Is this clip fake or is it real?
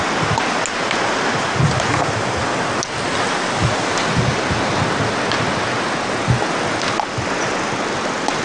real